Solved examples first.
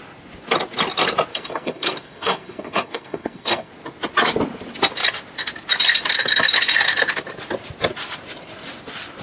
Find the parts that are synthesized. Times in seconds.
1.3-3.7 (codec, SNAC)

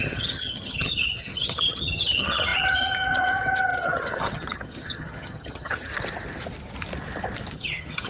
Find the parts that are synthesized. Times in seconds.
0.0-5.9 (vocoder, HiFi-GAN); 7.5-8.1

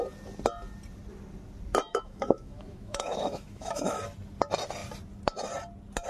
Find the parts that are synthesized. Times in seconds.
1.9-4.0 (autoencoder, DAC-VAE)

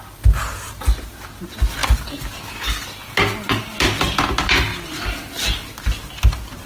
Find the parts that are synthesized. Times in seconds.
none

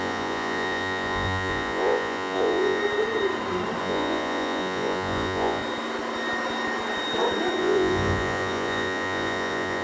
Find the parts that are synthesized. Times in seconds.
0.0-2.8 (vocoder, Vocos); 3.8-5.6; 7.6-9.8